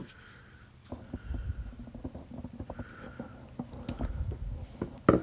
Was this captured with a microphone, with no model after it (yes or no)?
yes